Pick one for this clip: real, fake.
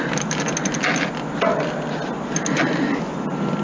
real